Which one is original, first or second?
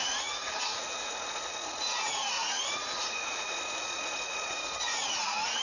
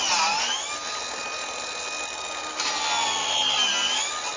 second